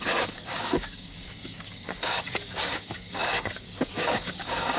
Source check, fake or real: fake